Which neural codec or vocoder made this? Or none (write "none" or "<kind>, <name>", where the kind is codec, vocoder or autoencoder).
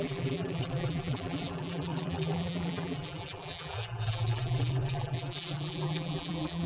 vocoder, BigVGAN v2